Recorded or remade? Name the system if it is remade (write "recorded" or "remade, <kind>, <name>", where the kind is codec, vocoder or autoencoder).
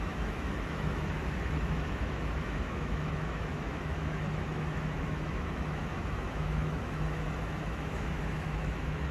remade, autoencoder, DAC-VAE